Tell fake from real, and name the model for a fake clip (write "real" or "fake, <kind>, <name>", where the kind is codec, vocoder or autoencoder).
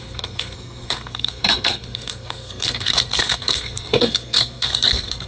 fake, codec, SNAC